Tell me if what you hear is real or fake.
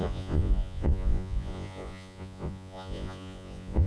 fake